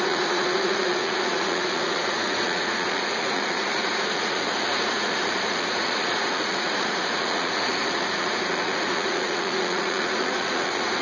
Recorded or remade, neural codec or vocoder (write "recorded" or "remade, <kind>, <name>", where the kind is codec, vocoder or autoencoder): remade, vocoder, Vocos